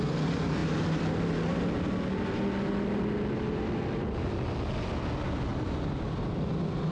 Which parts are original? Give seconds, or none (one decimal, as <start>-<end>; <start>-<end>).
0.0-6.9